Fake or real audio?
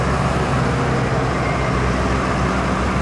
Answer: real